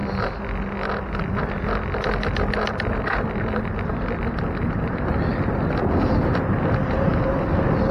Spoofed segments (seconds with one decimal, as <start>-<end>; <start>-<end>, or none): none